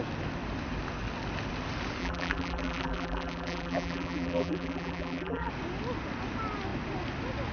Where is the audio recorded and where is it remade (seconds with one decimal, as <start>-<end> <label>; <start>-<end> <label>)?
0.0-2.0 recorded; 2.0-5.5 remade; 5.5-7.5 recorded